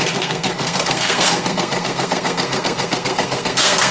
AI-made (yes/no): yes